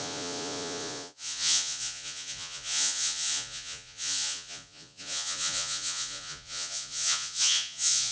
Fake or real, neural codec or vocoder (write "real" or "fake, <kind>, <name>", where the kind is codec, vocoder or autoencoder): fake, vocoder, Vocos